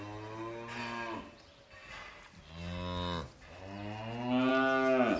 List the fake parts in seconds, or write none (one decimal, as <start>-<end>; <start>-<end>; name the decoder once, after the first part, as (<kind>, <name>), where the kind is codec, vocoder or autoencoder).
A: none